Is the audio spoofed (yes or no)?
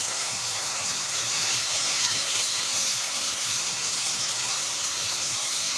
yes